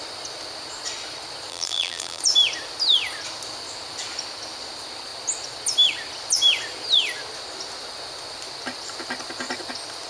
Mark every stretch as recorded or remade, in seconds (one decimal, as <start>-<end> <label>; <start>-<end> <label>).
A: 0.0-1.5 recorded; 1.5-2.2 remade; 2.2-10.1 recorded

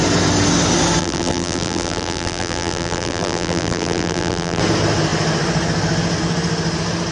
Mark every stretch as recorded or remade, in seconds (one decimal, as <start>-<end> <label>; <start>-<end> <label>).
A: 0.0-1.0 recorded; 1.0-4.6 remade; 4.6-7.1 recorded

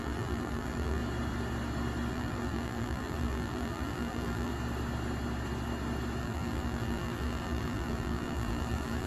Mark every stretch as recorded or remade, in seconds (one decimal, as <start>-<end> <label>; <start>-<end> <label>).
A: 0.0-1.0 remade; 1.0-2.1 recorded; 2.1-4.5 remade; 4.5-6.2 recorded; 6.2-9.1 remade

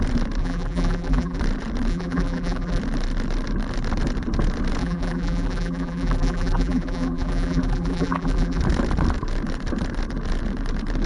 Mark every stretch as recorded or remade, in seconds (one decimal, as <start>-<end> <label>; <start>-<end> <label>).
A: 0.0-0.4 recorded; 0.4-1.4 remade; 1.4-1.9 recorded; 1.9-2.8 remade; 2.8-4.8 recorded; 4.8-8.6 remade; 8.6-11.1 recorded

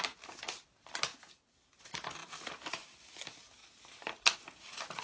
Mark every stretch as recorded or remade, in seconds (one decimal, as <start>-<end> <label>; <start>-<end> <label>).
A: 0.0-1.1 recorded; 1.1-1.8 remade; 1.8-2.2 recorded; 2.2-2.7 remade; 2.7-5.0 recorded